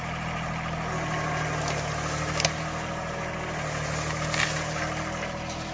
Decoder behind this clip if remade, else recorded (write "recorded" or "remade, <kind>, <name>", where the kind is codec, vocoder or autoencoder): recorded